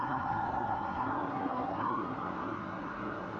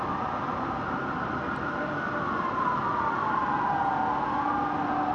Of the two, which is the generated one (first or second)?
first